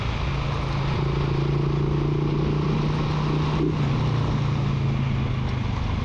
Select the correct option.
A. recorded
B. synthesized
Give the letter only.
A